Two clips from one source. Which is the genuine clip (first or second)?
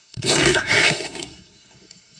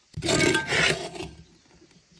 second